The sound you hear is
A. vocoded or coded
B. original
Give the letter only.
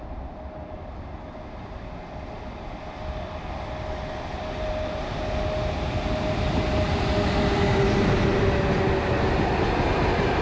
B